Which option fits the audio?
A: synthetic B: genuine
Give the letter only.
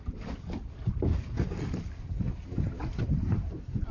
B